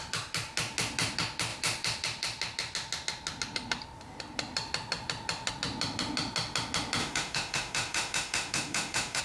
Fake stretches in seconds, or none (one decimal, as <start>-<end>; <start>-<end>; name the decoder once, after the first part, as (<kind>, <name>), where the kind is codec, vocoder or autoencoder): 7.0-9.2 (autoencoder, DAC-VAE)